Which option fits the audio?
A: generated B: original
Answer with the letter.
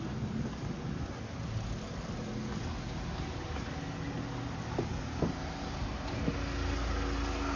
B